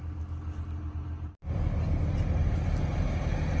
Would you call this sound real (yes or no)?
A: yes